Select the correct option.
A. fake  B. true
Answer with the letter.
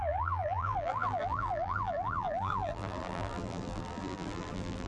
A